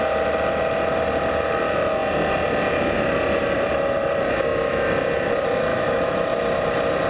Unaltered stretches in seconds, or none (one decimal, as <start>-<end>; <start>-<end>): 0.0-5.7; 6.3-7.1